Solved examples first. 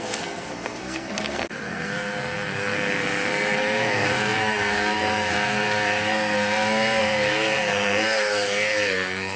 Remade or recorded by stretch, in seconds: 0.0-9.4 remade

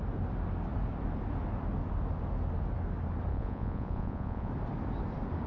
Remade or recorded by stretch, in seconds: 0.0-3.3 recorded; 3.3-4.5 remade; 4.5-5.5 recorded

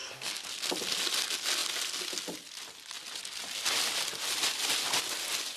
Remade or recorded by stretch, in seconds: 0.0-0.5 remade; 0.5-5.6 recorded

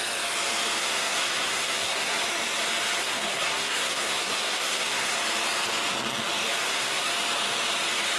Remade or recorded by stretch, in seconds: 0.0-0.8 recorded; 0.8-2.2 remade; 2.2-3.0 recorded; 3.0-5.2 remade; 5.2-6.6 recorded; 6.6-7.1 remade; 7.1-8.2 recorded